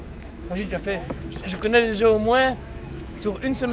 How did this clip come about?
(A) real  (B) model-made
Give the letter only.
B